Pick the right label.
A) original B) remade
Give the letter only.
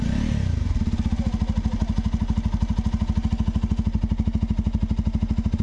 A